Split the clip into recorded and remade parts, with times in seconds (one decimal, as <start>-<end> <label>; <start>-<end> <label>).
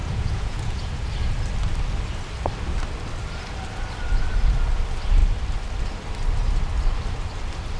0.0-1.1 remade; 1.1-7.8 recorded